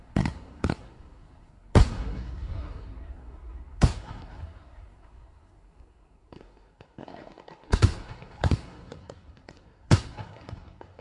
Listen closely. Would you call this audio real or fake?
fake